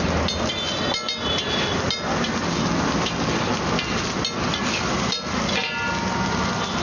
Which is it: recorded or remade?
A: recorded